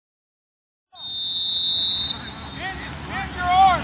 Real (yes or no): yes